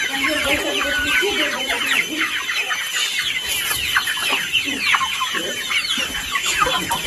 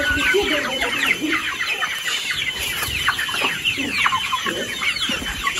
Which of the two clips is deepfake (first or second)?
second